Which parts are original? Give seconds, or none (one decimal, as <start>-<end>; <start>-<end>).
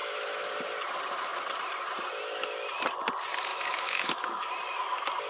0.5-3.5; 4.5-5.3